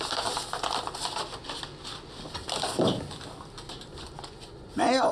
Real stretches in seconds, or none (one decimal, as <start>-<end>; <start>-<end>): 0.0-3.9